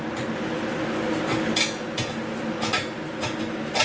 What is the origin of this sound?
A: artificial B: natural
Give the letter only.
B